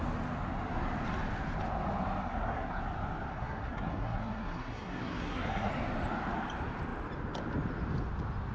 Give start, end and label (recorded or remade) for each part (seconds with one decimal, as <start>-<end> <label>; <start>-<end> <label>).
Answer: 0.0-2.2 recorded; 2.2-2.8 remade; 2.8-3.3 recorded; 3.3-5.7 remade; 5.7-8.5 recorded